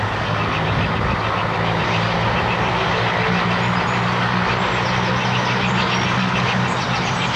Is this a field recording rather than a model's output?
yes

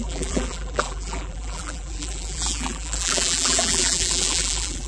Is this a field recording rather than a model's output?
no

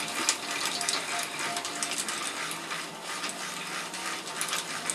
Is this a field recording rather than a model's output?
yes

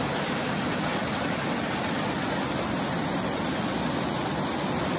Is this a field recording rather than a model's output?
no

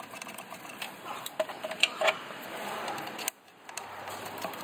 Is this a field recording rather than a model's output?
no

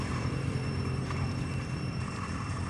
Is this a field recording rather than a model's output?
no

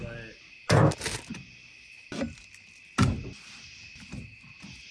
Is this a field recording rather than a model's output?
yes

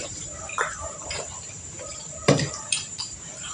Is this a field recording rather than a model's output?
no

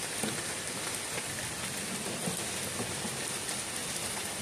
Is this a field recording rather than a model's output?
yes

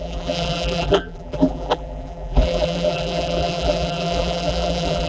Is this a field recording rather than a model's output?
no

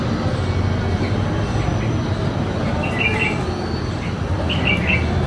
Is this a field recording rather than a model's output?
yes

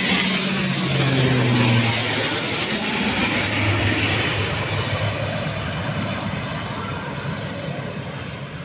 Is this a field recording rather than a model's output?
yes